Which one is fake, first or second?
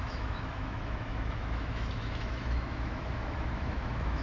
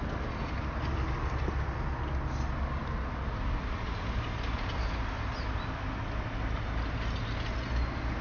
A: first